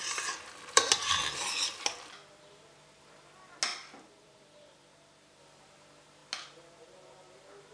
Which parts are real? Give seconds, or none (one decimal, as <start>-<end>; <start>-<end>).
1.1-3.7; 5.4-7.7